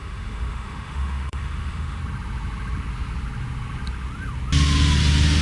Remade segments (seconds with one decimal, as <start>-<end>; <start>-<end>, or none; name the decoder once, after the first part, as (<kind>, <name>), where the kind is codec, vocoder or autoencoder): 0.0-2.0 (autoencoder, DAC-VAE)